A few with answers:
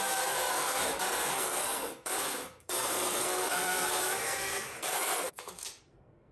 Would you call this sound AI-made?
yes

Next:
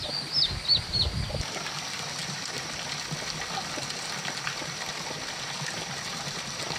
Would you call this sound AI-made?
no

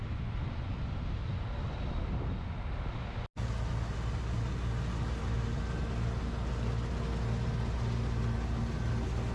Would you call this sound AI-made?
no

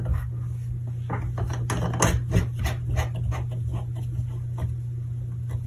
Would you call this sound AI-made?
no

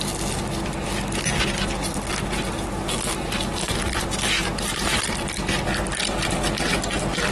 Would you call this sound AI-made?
no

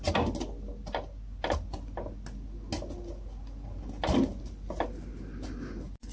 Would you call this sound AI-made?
no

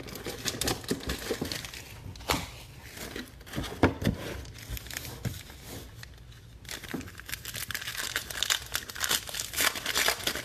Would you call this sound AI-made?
no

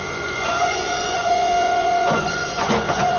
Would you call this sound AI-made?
yes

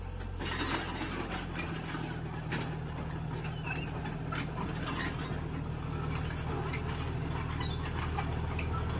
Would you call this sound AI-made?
no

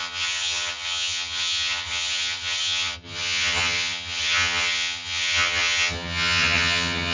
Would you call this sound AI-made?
yes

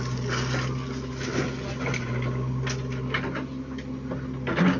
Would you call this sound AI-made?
no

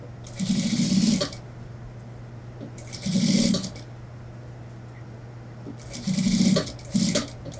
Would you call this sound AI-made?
no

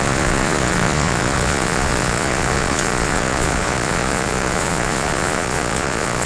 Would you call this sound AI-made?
yes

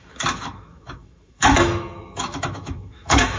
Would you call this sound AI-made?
yes